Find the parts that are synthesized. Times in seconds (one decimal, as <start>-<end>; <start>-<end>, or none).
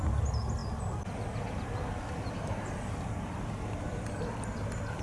none